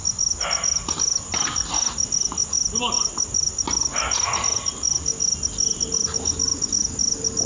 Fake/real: real